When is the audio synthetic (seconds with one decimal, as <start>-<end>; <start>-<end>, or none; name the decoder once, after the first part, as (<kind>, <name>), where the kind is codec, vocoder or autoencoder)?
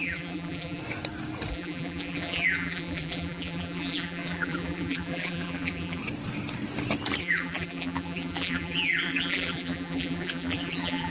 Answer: 0.0-0.8 (vocoder, BigVGAN v2); 1.5-6.0; 7.2-11.1